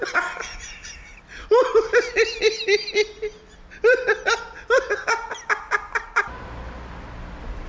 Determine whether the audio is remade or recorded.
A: recorded